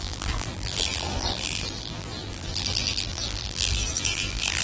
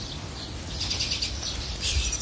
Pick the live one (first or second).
second